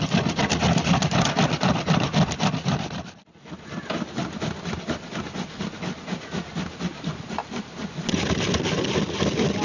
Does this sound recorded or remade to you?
recorded